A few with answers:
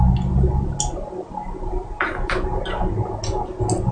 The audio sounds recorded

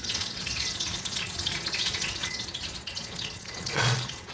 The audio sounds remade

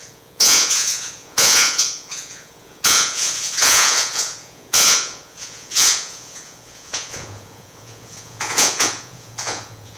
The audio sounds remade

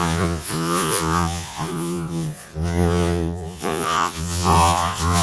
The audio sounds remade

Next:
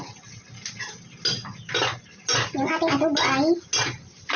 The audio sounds recorded